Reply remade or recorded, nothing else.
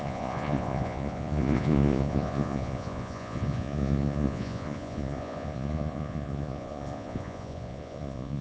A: remade